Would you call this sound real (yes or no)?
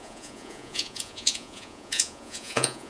no